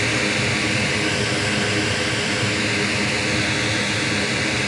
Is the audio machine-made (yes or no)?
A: no